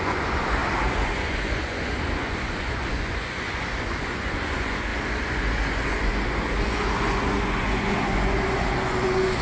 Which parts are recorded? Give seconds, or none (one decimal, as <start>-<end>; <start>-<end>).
none